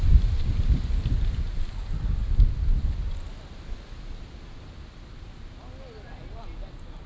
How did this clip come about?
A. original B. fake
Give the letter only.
A